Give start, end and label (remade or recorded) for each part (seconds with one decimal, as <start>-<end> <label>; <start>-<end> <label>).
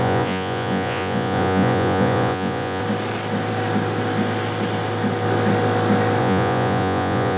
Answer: 0.0-2.8 remade; 2.8-6.2 recorded; 6.2-7.4 remade